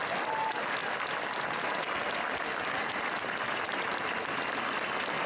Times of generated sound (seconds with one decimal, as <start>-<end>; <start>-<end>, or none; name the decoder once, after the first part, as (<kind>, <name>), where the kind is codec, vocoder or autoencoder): none